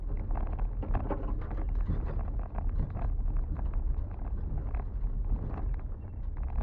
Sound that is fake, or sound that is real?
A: real